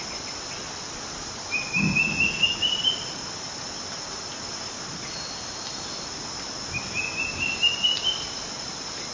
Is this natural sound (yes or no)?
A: yes